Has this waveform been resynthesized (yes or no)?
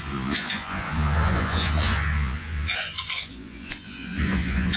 yes